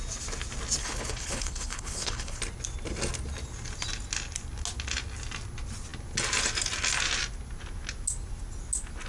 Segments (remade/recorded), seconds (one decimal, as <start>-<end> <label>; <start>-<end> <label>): 0.0-0.8 recorded; 0.8-2.4 remade; 2.4-9.1 recorded